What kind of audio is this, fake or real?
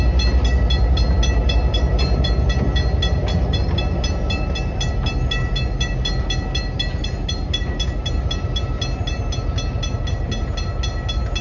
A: real